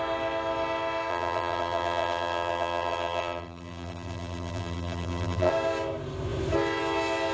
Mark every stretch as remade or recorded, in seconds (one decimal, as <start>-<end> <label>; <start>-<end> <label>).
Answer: 0.0-1.1 recorded; 1.1-5.5 remade; 5.5-7.3 recorded